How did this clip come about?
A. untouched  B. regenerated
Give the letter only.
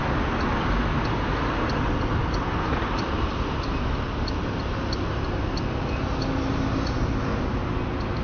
A